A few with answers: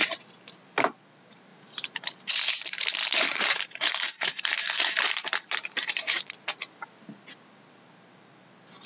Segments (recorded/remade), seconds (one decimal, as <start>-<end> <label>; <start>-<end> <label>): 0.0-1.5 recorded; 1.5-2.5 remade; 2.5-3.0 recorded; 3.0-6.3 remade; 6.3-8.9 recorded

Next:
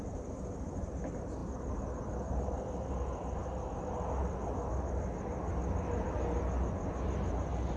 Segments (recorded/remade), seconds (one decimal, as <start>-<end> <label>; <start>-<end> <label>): 0.0-7.8 recorded

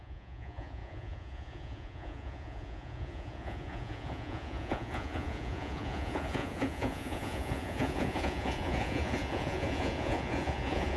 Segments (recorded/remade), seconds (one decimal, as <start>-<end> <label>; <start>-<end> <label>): 0.0-11.0 remade

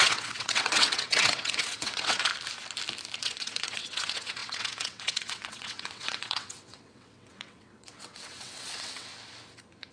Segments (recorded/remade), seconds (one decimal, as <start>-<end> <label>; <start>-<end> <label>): 0.0-2.3 remade; 2.3-3.2 recorded; 3.2-9.1 remade; 9.1-9.9 recorded

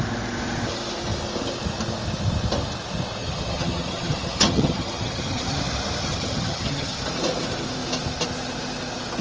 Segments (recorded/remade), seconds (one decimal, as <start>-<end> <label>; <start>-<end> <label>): 0.0-3.2 recorded; 3.2-5.6 remade; 5.6-6.0 recorded; 6.0-7.0 remade; 7.0-9.2 recorded

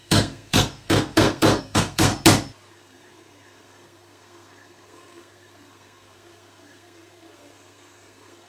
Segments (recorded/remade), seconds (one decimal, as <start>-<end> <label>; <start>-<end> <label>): 0.0-2.1 remade; 2.1-2.7 recorded; 2.7-8.5 remade

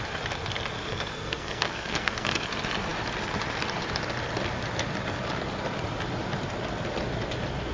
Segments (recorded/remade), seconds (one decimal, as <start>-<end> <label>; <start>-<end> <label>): 0.0-0.9 recorded; 0.9-2.4 remade; 2.4-7.7 recorded